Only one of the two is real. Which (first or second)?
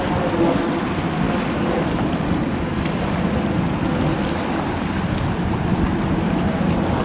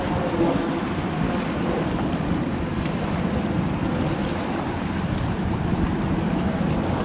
first